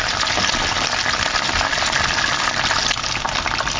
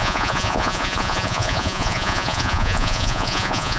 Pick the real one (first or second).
first